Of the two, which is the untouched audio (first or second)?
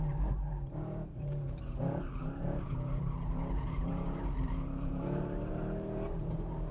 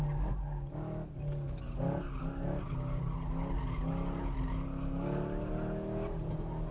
second